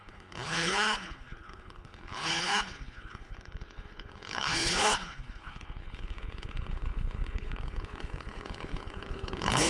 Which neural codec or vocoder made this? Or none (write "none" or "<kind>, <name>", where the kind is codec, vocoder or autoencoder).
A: codec, HILCodec